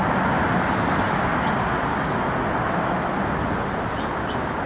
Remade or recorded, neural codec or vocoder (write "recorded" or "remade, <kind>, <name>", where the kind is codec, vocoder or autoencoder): recorded